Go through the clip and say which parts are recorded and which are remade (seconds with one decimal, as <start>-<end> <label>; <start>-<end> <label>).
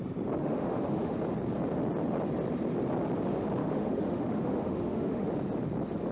0.0-0.4 recorded; 0.4-1.1 remade; 1.1-3.6 recorded; 3.6-5.3 remade; 5.3-6.1 recorded